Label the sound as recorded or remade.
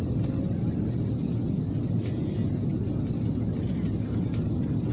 recorded